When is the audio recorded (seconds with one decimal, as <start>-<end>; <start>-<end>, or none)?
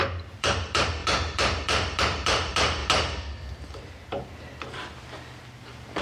2.8-5.6